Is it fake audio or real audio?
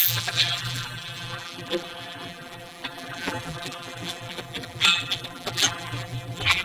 fake